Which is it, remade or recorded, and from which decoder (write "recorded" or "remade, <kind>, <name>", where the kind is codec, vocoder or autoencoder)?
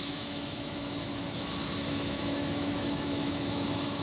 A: remade, autoencoder, DAC-VAE